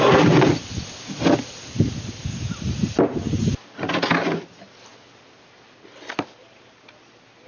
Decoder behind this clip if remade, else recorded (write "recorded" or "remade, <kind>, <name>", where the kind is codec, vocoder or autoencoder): recorded